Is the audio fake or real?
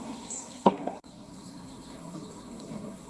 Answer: fake